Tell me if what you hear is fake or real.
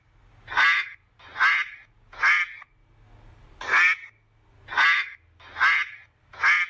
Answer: real